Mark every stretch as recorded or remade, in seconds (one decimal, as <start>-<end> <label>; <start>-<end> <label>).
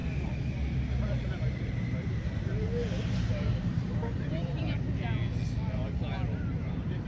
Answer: 0.0-1.0 recorded; 1.0-2.7 remade; 2.7-3.3 recorded; 3.3-4.6 remade; 4.6-6.5 recorded; 6.5-7.1 remade